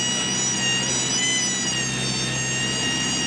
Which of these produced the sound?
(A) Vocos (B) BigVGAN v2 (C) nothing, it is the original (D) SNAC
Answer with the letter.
C